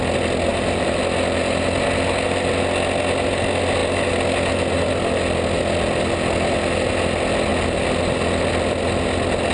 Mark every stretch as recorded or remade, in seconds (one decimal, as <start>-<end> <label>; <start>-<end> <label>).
0.0-0.5 recorded; 0.5-1.0 remade; 1.0-9.5 recorded